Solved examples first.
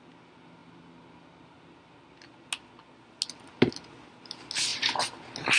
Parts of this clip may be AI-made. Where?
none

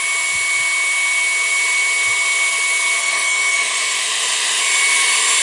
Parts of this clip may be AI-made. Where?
3.0-4.6 (autoencoder, DAC-VAE)

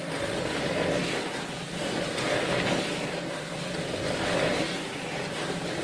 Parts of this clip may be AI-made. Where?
none